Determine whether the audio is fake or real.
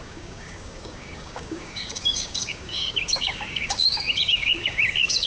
fake